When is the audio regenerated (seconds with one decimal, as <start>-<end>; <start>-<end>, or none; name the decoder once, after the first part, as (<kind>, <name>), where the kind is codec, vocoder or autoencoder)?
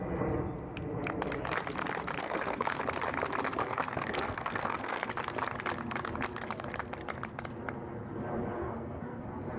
2.2-2.8 (codec, SNAC); 3.6-5.1; 8.6-9.2